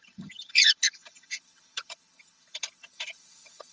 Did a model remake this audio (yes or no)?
yes